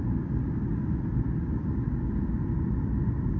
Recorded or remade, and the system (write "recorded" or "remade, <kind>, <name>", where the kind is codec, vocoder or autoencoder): recorded